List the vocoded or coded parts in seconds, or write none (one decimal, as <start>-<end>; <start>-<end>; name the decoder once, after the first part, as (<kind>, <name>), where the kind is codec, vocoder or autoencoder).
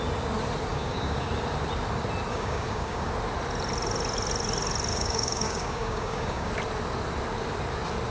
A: 0.7-1.3 (codec, DAC); 2.3-3.1; 4.9-6.5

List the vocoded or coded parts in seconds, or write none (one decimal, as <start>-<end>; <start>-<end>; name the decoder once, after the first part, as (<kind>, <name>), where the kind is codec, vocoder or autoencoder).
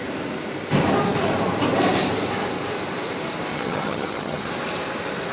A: 3.5-4.5 (vocoder, HiFi-GAN)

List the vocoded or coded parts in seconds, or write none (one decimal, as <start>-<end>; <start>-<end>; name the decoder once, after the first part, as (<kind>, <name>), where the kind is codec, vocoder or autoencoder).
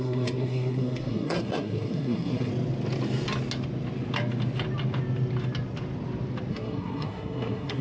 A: 0.0-2.5 (codec, SNAC); 6.5-7.8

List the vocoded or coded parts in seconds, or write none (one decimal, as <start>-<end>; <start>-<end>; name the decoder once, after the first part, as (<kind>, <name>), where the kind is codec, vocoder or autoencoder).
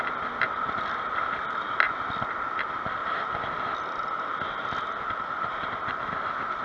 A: 0.0-3.0 (vocoder, BigVGAN v2)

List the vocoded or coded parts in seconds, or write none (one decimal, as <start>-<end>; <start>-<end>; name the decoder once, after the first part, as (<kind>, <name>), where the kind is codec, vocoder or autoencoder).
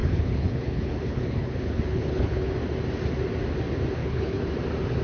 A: 0.0-2.5 (codec, HILCodec); 4.0-4.5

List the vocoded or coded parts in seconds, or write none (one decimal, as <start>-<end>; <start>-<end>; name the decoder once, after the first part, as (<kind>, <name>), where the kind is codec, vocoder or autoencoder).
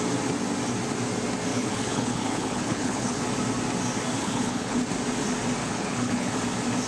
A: 1.5-3.2 (codec, HILCodec); 4.2-4.8; 5.6-6.3